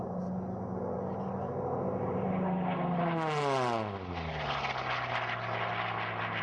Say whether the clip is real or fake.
real